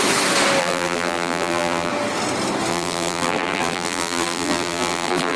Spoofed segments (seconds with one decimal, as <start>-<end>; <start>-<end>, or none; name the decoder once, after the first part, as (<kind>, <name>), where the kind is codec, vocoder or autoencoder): 0.6-1.9 (vocoder, BigVGAN v2); 2.7-5.4